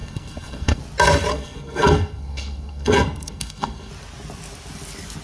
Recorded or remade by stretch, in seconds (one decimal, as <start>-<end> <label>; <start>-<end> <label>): 0.0-0.8 remade; 0.8-1.3 recorded; 1.3-3.9 remade; 3.9-5.2 recorded